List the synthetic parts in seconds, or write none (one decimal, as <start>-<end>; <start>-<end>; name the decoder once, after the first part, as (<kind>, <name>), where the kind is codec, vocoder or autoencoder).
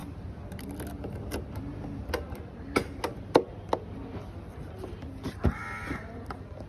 none